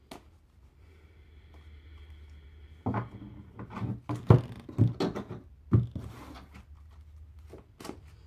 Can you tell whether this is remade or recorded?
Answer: recorded